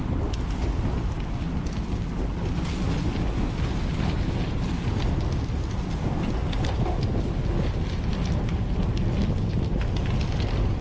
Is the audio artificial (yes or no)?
no